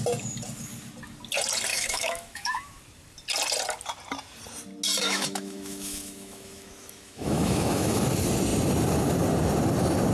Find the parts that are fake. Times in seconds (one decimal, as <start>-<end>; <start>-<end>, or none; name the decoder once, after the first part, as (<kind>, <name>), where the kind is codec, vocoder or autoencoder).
1.7-2.8 (autoencoder, DAC-VAE); 5.0-8.0